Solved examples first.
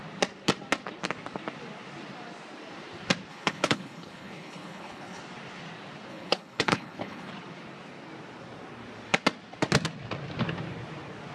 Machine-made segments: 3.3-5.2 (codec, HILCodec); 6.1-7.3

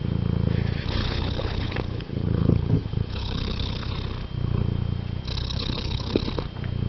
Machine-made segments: 1.0-3.9 (codec, HILCodec); 5.4-6.2

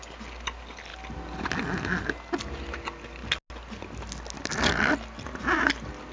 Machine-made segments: none

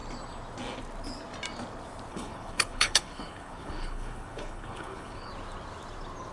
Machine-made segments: 2.1-5.3 (codec, HILCodec)

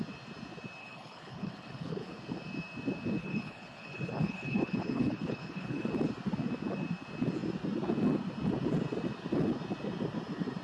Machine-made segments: 0.8-2.2 (codec, HILCodec); 3.2-5.9

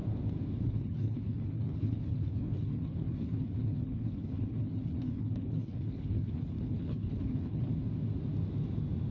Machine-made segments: 0.6-7.7 (codec, HILCodec)

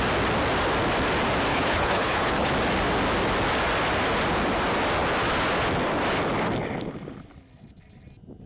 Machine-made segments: 1.5-2.5 (codec, HILCodec)

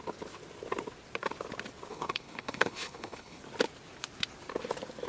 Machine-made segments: 1.9-3.4 (codec, HILCodec)